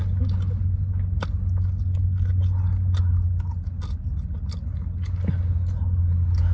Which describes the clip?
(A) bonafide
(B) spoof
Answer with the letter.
A